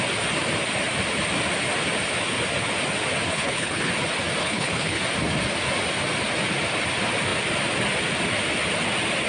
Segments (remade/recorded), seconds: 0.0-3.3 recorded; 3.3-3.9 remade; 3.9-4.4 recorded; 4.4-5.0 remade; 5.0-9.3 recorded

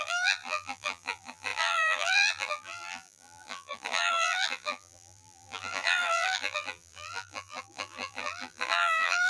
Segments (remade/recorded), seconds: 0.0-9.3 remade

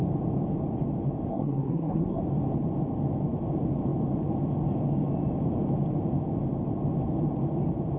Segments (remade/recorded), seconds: 0.0-1.3 recorded; 1.3-2.2 remade; 2.2-8.0 recorded

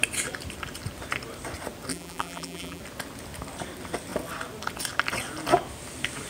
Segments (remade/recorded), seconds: 0.0-1.9 recorded; 1.9-2.8 remade; 2.8-6.3 recorded

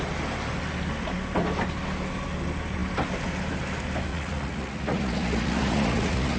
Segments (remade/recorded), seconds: 0.0-4.1 recorded; 4.1-6.4 remade

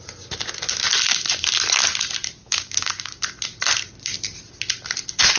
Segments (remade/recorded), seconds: 0.0-2.4 recorded; 2.4-3.2 remade; 3.2-5.4 recorded